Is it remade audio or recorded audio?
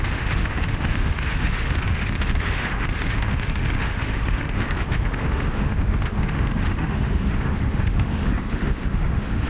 remade